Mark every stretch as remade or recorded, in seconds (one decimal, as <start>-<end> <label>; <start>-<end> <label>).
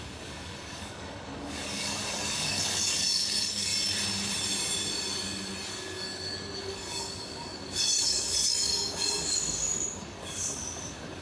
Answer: 0.0-3.7 remade; 3.7-5.7 recorded; 5.7-11.2 remade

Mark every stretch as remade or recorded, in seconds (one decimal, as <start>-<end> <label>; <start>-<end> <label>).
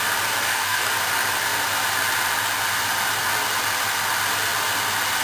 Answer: 0.0-0.4 recorded; 0.4-0.9 remade; 0.9-5.2 recorded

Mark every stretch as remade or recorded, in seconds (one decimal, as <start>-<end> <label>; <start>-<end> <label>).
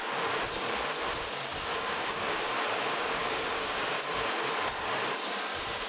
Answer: 0.0-1.7 recorded; 1.7-2.5 remade; 2.5-3.0 recorded; 3.0-3.9 remade; 3.9-5.9 recorded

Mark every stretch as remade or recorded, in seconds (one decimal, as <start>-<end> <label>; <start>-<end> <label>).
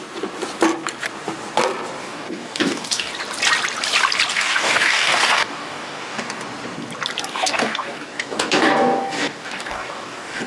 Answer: 0.0-2.0 recorded; 2.0-3.1 remade; 3.1-4.3 recorded; 4.3-6.4 remade; 6.4-7.3 recorded; 7.3-10.5 remade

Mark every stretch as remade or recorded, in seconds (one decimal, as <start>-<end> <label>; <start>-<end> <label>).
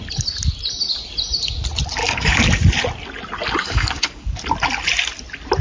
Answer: 0.0-2.0 recorded; 2.0-2.6 remade; 2.6-3.6 recorded; 3.6-4.4 remade; 4.4-5.6 recorded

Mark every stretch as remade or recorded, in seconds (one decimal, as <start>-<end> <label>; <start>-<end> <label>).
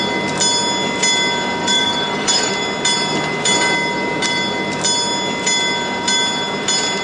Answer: 0.0-1.6 recorded; 1.6-2.5 remade; 2.5-7.0 recorded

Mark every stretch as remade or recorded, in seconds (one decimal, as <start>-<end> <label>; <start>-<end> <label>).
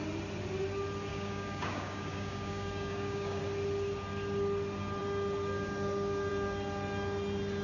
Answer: 0.0-1.1 recorded; 1.1-3.4 remade; 3.4-7.6 recorded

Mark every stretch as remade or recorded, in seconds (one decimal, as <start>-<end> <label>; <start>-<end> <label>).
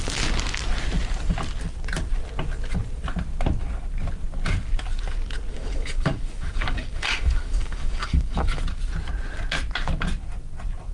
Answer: 0.0-5.5 recorded; 5.5-8.6 remade; 8.6-10.9 recorded